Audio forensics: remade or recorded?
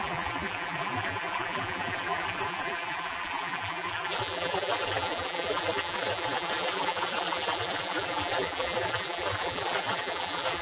remade